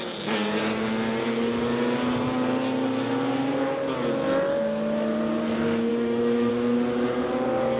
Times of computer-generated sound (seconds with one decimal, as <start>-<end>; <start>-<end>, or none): 5.9-6.5